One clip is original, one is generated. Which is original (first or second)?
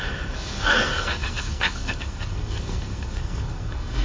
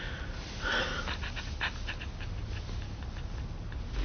second